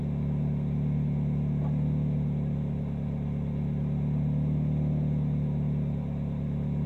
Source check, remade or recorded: recorded